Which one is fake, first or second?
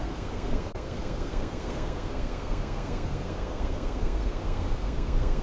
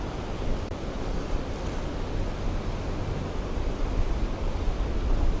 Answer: first